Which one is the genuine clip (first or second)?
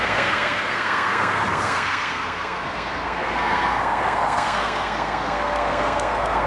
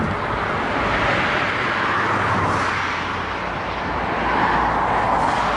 second